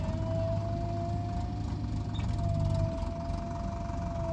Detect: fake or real real